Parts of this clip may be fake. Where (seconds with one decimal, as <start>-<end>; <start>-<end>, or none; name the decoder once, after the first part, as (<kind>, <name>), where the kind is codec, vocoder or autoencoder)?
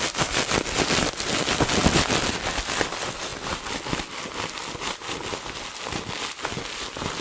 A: none